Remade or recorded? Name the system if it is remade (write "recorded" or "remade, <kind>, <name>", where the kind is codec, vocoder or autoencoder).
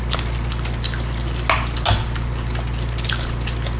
recorded